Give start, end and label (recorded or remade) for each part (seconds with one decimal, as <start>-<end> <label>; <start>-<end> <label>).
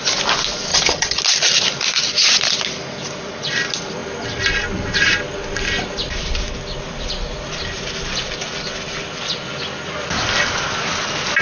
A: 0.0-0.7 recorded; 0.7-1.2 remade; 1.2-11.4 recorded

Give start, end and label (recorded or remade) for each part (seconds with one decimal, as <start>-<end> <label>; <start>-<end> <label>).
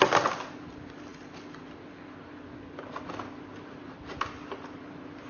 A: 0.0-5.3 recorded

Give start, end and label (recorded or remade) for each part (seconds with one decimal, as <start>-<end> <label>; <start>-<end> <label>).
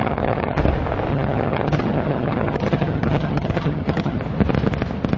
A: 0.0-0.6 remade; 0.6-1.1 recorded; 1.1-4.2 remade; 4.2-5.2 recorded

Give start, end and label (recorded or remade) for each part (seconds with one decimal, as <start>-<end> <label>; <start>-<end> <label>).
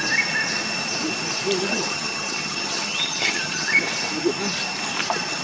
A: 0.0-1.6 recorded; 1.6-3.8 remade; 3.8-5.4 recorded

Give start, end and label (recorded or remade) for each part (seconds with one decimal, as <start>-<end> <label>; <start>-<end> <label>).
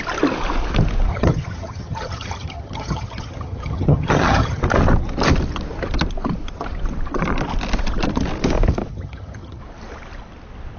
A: 0.0-1.1 recorded; 1.1-4.6 remade; 4.6-8.9 recorded; 8.9-9.6 remade; 9.6-10.8 recorded